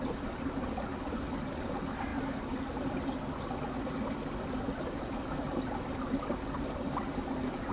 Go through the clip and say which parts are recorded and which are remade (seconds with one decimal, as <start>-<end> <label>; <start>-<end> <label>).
0.0-7.7 recorded

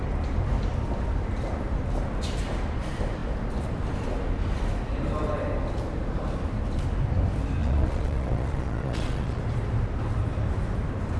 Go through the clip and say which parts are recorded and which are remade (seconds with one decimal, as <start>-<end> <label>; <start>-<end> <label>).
0.0-7.6 recorded; 7.6-9.4 remade; 9.4-11.2 recorded

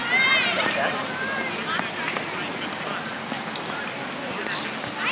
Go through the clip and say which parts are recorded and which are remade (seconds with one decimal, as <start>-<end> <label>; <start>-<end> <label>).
0.0-5.1 recorded

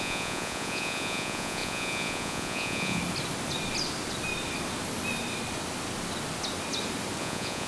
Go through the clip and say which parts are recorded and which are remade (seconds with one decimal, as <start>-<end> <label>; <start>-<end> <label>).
0.0-3.0 remade; 3.0-7.2 recorded; 7.2-7.7 remade

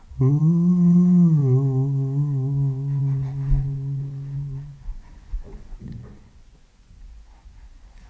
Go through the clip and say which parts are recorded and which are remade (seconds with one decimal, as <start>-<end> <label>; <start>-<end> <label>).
0.0-1.4 remade; 1.4-3.0 recorded; 3.0-8.1 remade

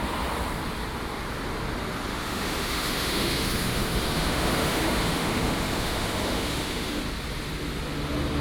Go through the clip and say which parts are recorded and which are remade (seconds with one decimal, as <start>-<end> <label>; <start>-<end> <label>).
0.0-2.1 recorded; 2.1-7.0 remade; 7.0-8.4 recorded